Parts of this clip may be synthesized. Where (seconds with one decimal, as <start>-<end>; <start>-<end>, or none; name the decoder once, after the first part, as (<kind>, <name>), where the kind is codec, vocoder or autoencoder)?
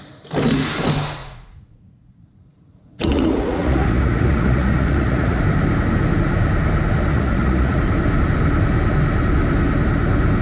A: 1.2-5.4 (vocoder, Vocos); 7.1-7.8